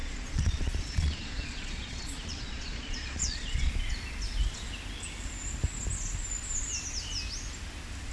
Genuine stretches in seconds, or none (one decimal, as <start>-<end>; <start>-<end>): 3.7-8.1